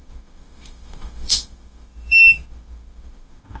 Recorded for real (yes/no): no